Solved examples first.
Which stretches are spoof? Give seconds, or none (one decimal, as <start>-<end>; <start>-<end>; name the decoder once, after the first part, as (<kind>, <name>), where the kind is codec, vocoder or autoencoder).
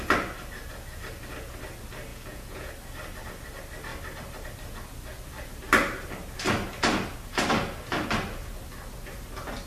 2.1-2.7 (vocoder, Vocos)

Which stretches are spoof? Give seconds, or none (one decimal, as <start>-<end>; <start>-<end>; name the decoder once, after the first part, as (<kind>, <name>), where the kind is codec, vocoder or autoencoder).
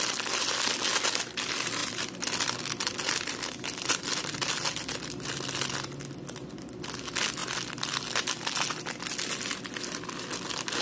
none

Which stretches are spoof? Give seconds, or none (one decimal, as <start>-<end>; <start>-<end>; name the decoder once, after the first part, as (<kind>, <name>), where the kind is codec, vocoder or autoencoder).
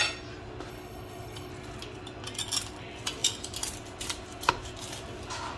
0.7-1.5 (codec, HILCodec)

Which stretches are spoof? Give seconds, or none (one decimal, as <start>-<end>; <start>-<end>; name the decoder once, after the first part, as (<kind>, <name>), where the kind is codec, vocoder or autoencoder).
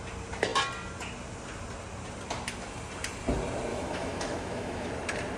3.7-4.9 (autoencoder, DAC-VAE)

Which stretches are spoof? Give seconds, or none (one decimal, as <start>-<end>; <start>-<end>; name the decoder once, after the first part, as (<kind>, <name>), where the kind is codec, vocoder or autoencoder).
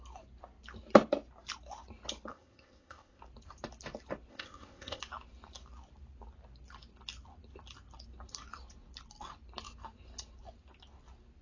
2.3-3.2 (codec, ZipCodec); 4.3-5.0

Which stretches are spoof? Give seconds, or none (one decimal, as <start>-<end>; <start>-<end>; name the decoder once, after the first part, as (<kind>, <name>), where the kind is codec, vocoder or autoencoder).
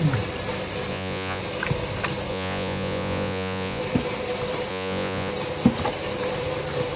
0.9-1.4 (vocoder, Vocos); 2.3-3.8; 4.7-5.3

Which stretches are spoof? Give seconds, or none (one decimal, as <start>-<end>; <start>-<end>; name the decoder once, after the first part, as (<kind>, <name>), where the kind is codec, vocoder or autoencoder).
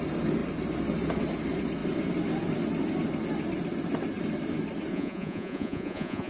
4.9-6.3 (vocoder, Vocos)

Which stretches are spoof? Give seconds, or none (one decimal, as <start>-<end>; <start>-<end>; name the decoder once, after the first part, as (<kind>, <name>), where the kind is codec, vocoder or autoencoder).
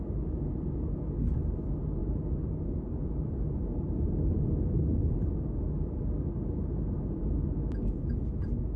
2.0-3.3 (vocoder, BigVGAN v2); 5.0-5.6